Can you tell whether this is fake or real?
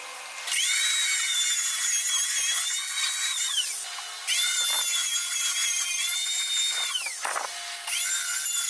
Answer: real